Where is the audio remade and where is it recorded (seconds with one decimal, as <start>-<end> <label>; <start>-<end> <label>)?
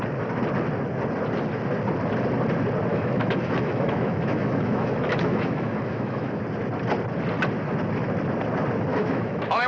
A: 0.0-2.9 recorded; 2.9-6.4 remade; 6.4-8.9 recorded; 8.9-9.7 remade